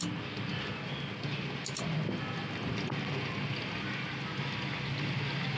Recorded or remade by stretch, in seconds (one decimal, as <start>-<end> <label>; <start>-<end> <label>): 0.0-5.6 recorded